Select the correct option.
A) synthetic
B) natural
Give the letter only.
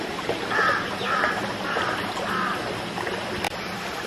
B